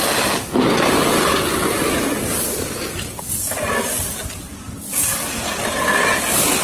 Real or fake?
real